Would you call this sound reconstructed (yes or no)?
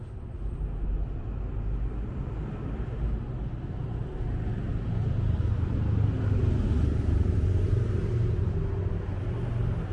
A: no